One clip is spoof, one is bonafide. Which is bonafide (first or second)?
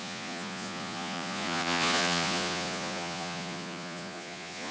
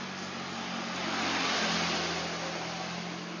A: second